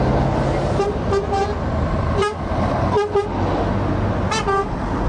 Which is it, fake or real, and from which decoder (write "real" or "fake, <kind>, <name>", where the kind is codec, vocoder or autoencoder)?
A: real